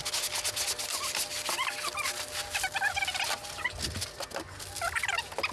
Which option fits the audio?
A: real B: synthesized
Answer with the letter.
A